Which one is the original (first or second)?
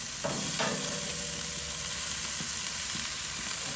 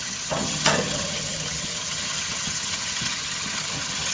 first